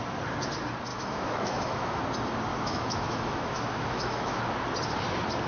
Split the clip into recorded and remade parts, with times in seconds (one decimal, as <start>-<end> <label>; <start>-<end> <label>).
0.0-0.9 recorded; 0.9-2.0 remade; 2.0-2.5 recorded; 2.5-4.4 remade; 4.4-5.5 recorded